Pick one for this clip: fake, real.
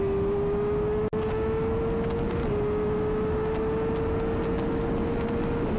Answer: real